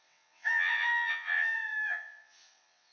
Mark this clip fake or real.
fake